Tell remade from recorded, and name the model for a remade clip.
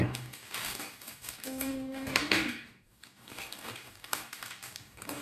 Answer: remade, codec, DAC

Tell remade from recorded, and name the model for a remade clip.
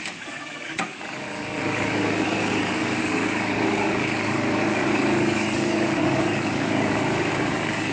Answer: remade, codec, DAC